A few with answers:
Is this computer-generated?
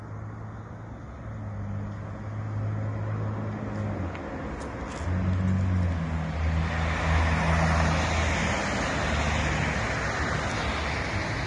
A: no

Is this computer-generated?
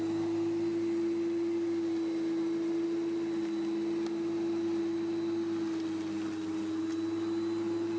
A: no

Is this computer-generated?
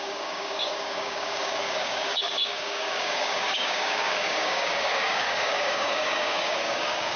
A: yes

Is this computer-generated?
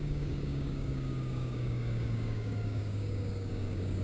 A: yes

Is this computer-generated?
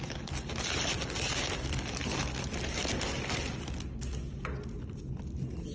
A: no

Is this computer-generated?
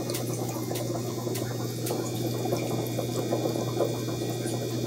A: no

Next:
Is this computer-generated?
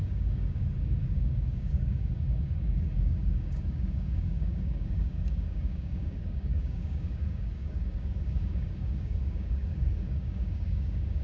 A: yes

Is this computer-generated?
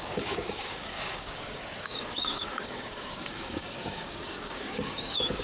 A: yes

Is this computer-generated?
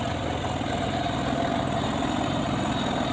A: no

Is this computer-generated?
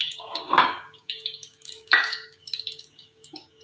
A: yes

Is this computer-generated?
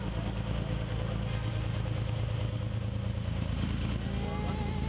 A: no